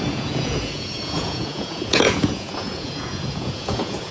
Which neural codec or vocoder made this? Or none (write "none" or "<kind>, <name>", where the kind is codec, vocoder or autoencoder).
vocoder, Vocos